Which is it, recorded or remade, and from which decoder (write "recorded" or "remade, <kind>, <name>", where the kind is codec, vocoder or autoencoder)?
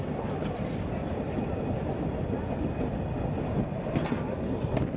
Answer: recorded